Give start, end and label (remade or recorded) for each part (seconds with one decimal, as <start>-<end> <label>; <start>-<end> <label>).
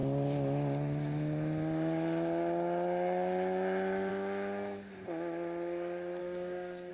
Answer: 0.0-6.2 recorded; 6.2-6.9 remade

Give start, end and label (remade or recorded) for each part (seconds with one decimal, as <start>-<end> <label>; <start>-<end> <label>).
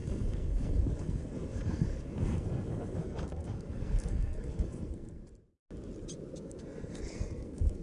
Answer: 0.0-5.2 remade; 5.2-6.4 recorded; 6.4-7.8 remade